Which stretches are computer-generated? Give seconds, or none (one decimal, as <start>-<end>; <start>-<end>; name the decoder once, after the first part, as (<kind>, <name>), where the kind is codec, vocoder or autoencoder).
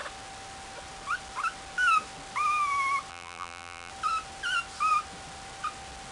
3.1-3.9 (vocoder, BigVGAN v2)